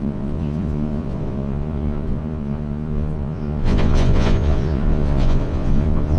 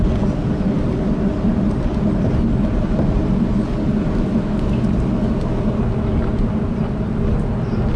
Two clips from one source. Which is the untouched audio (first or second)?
second